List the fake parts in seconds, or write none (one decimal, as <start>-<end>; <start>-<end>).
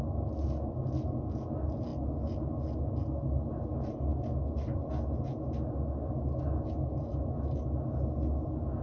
none